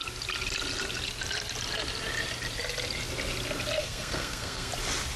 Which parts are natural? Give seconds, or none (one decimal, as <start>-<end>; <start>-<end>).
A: 0.0-3.8; 4.7-5.2